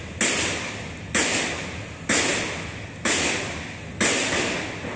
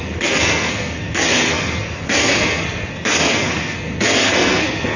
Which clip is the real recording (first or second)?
first